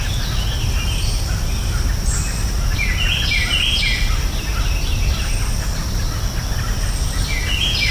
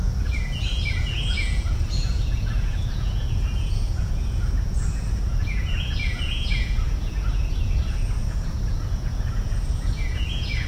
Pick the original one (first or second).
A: first